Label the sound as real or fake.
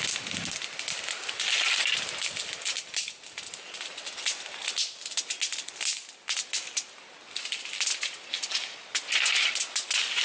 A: real